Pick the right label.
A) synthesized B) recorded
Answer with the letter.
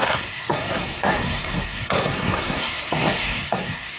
A